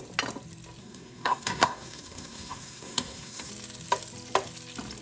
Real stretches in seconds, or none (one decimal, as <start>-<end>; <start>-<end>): 0.0-0.8; 3.5-5.0